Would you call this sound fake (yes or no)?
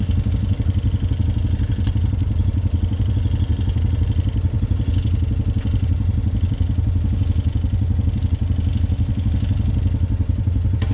no